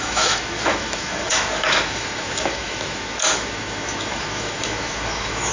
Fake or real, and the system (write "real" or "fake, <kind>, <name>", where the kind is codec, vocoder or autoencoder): fake, autoencoder, DAC-VAE